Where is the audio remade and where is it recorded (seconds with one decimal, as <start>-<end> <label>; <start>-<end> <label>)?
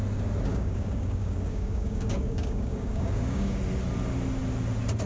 0.0-0.5 recorded; 0.5-3.6 remade; 3.6-5.1 recorded